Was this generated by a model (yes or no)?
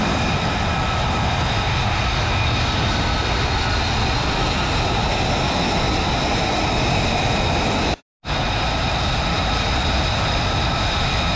no